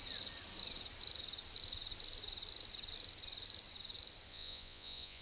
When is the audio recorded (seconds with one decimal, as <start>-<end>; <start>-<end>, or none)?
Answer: 0.0-4.3